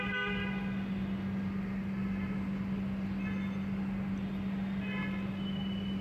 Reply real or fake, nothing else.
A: real